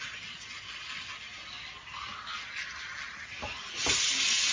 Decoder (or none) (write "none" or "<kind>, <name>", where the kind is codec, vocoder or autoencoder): none